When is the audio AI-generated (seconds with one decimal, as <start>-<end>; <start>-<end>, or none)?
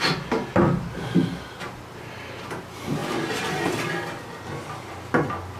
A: none